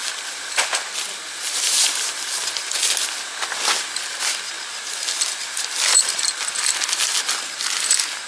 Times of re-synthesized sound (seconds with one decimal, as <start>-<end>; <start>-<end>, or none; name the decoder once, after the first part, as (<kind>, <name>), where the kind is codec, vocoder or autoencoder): none